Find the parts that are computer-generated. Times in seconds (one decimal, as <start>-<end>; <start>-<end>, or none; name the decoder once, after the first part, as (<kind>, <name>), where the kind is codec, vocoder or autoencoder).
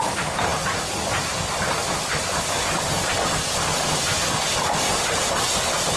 none